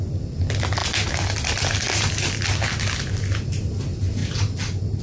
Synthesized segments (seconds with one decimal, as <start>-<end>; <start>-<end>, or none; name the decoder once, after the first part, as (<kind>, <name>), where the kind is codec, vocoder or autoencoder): none